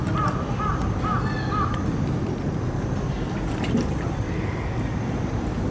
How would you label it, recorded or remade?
recorded